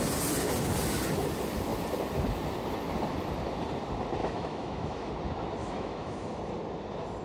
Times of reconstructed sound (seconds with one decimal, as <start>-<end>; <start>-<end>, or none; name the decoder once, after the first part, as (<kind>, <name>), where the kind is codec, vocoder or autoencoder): 4.2-5.1 (autoencoder, DAC-VAE); 5.6-6.4